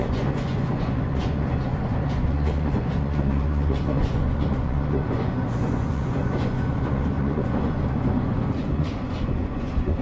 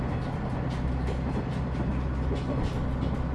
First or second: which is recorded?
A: second